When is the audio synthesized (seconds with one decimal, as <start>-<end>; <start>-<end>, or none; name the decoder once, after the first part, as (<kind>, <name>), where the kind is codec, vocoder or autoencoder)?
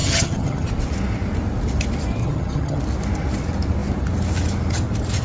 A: 0.0-0.7 (vocoder, HiFi-GAN); 2.2-2.8